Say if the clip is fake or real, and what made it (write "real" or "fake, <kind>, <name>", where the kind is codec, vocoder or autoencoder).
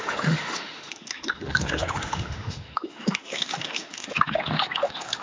fake, autoencoder, DAC-VAE